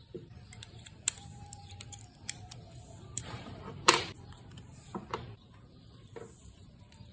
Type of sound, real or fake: fake